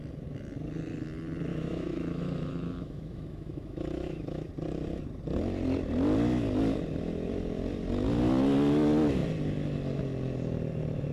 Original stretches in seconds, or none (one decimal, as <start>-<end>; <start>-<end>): 0.0-1.5; 4.5-11.1